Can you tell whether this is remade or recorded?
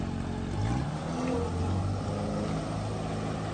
recorded